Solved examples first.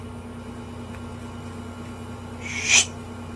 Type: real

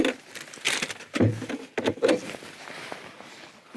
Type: real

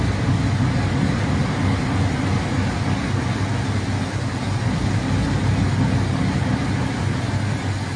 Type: real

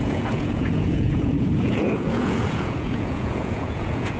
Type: fake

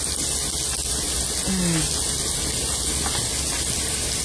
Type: real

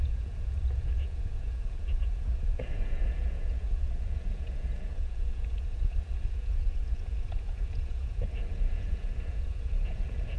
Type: fake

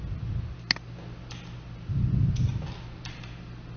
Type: real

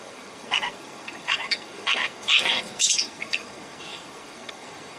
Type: fake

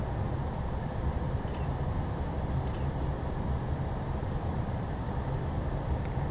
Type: real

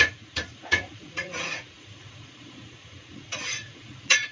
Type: fake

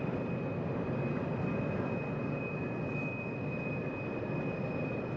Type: real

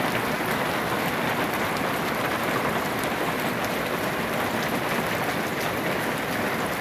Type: real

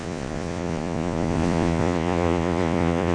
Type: fake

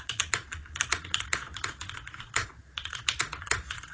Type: fake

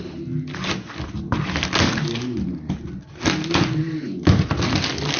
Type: real